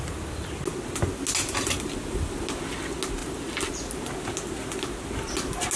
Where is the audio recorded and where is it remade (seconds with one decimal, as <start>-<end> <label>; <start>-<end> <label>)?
0.0-3.2 recorded; 3.2-3.9 remade; 3.9-5.8 recorded